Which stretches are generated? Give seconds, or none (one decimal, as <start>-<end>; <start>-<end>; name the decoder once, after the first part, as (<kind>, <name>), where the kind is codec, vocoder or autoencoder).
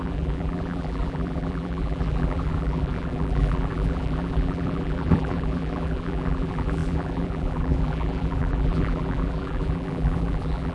0.0-10.7 (vocoder, BigVGAN v2)